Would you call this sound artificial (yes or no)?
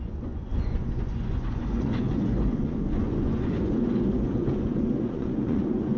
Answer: yes